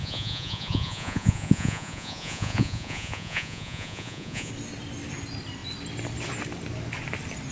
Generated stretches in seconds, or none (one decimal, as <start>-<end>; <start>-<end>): 0.0-4.5